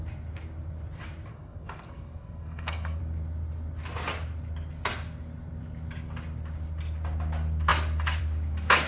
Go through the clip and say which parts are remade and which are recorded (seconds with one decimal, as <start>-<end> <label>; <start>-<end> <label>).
0.0-1.3 recorded; 1.3-3.0 remade; 3.0-8.9 recorded